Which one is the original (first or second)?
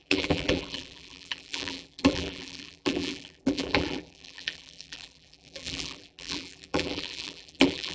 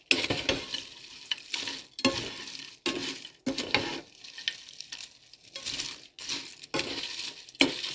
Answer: second